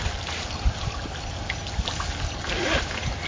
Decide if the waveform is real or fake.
real